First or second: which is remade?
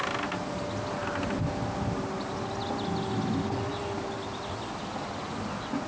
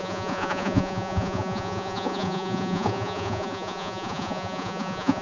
second